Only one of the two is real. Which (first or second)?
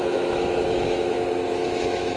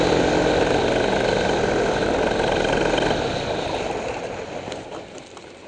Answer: second